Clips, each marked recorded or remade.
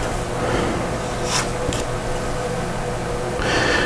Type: recorded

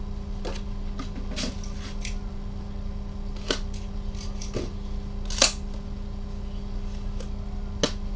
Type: recorded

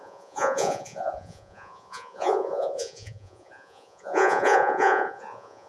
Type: remade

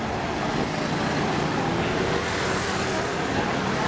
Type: recorded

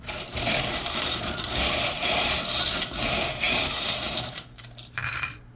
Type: remade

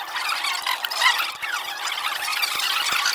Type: recorded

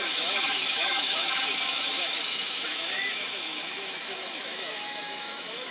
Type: remade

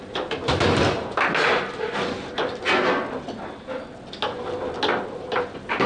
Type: recorded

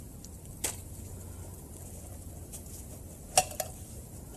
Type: recorded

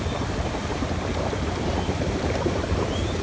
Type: remade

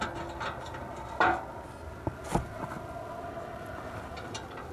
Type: recorded